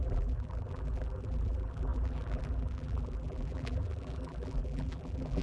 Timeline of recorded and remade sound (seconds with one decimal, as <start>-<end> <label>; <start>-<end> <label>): 0.0-5.4 remade